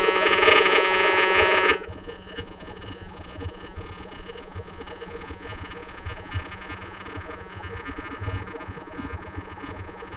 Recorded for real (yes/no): no